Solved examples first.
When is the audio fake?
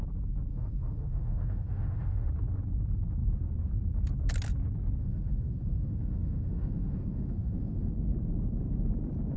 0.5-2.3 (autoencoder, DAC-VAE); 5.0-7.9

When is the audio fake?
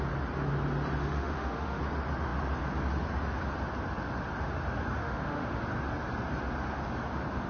1.0-1.8 (autoencoder, DAC-VAE); 5.0-5.6